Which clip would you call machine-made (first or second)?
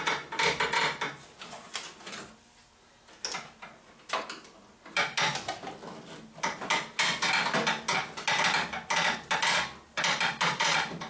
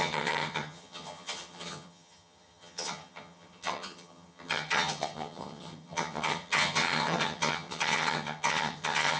second